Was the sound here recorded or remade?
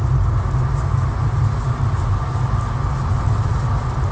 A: recorded